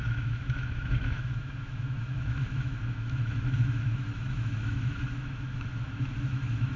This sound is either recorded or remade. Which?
remade